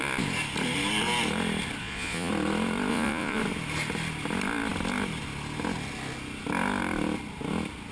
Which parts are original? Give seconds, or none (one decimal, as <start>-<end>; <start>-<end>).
0.0-1.8; 2.3-2.9; 3.4-7.9